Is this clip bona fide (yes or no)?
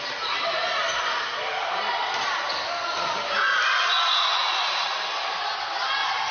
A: yes